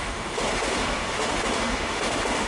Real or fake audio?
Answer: fake